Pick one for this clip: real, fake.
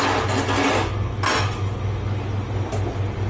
real